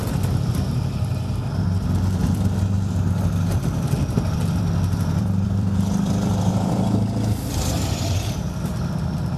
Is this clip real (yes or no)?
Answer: no